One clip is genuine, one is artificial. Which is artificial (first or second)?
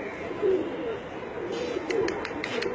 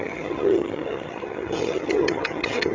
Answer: second